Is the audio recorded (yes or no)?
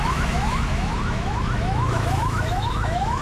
no